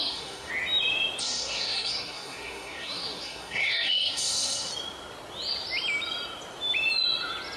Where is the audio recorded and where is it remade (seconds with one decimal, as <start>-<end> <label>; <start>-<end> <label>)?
0.0-0.5 remade; 0.5-1.2 recorded; 1.2-4.7 remade; 4.7-7.6 recorded